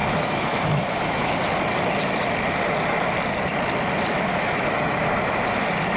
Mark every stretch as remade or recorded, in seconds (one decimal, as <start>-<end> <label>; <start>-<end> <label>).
0.0-1.3 remade; 1.3-4.3 recorded; 4.3-5.1 remade; 5.1-6.0 recorded